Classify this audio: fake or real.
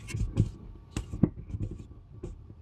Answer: real